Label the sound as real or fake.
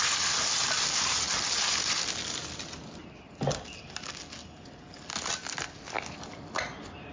real